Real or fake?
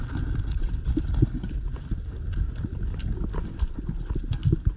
real